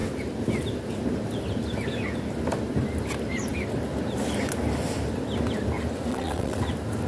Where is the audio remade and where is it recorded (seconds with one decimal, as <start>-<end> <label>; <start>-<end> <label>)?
0.0-6.1 recorded; 6.1-6.6 remade; 6.6-7.1 recorded